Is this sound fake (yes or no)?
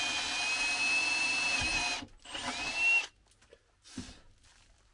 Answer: no